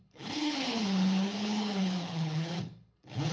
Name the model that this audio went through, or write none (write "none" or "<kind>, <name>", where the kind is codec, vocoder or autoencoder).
codec, HILCodec